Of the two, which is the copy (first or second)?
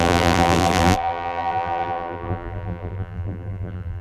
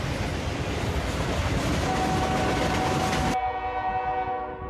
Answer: first